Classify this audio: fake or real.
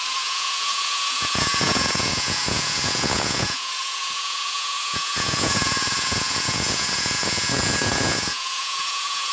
fake